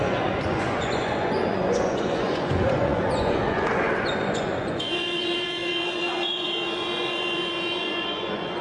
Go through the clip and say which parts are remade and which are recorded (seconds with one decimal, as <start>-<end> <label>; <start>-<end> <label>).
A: 0.0-8.6 remade